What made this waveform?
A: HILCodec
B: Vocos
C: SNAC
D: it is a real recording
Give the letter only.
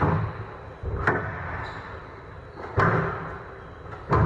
D